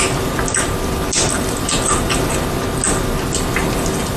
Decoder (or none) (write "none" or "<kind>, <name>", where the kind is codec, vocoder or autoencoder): none